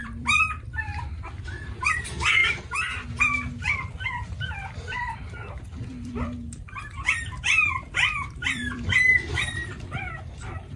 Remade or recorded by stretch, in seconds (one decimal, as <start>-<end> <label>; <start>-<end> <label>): 0.0-2.4 remade; 2.4-3.2 recorded; 3.2-10.8 remade